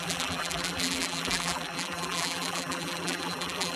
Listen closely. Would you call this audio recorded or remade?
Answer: remade